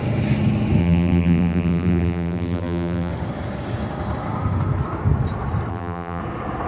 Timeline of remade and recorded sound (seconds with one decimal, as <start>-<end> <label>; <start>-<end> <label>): 0.0-0.8 recorded; 0.8-3.1 remade; 3.1-5.7 recorded; 5.7-6.2 remade; 6.2-6.7 recorded